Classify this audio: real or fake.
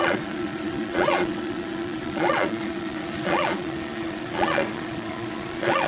fake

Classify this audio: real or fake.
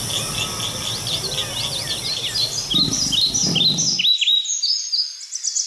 real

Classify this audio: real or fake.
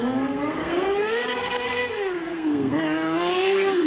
fake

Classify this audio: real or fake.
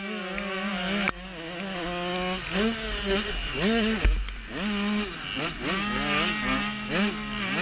real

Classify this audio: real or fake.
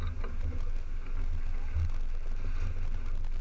real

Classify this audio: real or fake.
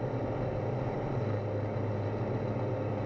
real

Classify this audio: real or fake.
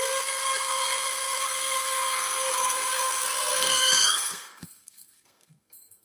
fake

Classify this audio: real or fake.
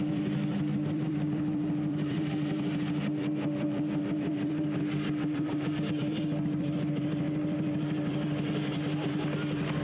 fake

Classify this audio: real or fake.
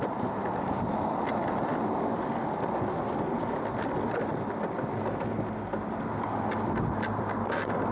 real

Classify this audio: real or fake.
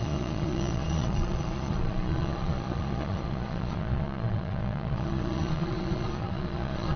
fake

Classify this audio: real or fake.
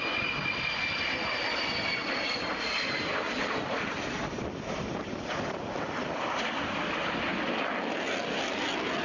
real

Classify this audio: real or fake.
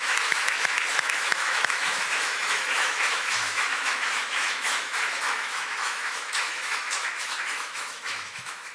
fake